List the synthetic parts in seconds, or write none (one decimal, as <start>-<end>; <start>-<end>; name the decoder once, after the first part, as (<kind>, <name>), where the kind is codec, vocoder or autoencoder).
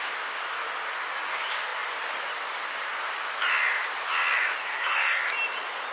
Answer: 4.6-5.3 (codec, SNAC)